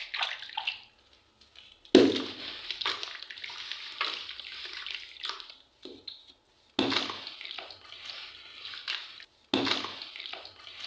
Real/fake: real